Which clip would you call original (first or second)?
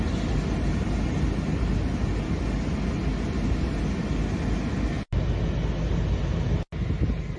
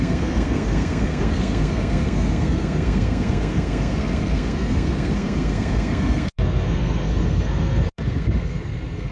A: first